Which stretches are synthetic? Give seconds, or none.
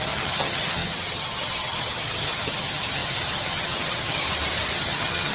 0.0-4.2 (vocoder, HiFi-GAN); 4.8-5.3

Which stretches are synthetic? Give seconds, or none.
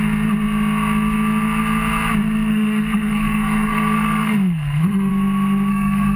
2.5-5.1 (codec, SNAC); 5.7-6.2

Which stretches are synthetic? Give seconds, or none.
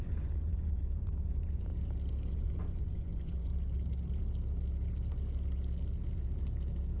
0.0-1.7 (vocoder, Vocos); 2.3-3.5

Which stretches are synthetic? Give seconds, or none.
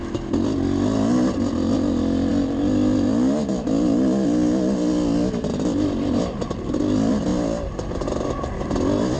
none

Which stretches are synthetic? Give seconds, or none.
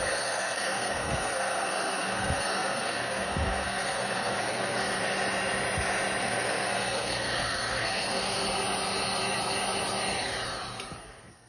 0.0-5.0 (codec, SNAC); 6.2-8.4; 11.0-11.5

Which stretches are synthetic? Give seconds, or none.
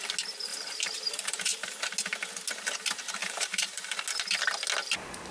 0.5-1.7 (vocoder, BigVGAN v2); 3.2-4.0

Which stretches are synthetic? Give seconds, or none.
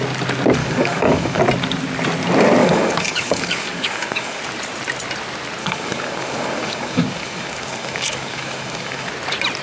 0.6-1.4 (codec, DAC); 2.6-4.4; 5.6-9.1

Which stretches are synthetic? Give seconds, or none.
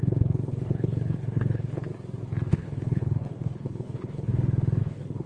0.0-1.9 (codec, HILCodec); 2.5-4.3; 4.8-5.3